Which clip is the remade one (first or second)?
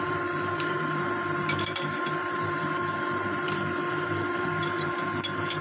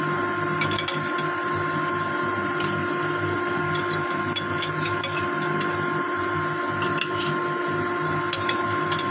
first